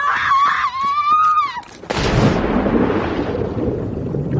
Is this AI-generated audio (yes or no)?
no